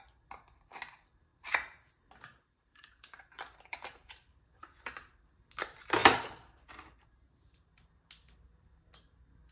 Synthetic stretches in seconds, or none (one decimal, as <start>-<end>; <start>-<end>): 1.3-1.9; 2.3-5.4; 6.0-7.9

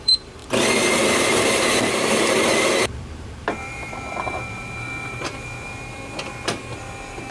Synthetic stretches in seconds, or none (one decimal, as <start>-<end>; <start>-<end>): 0.0-0.4; 0.9-7.3

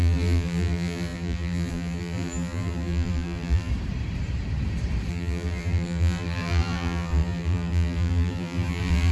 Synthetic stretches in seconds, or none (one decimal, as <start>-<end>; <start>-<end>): 0.0-3.7; 5.1-9.1

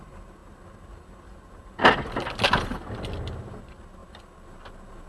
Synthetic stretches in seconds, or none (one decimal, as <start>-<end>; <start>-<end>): none